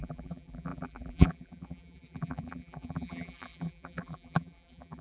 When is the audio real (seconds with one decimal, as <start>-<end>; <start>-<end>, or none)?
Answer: none